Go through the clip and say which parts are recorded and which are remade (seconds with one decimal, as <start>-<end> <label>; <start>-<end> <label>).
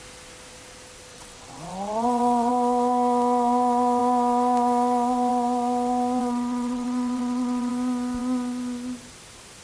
0.0-1.1 recorded; 1.1-2.5 remade; 2.5-6.2 recorded; 6.2-7.7 remade; 7.7-9.6 recorded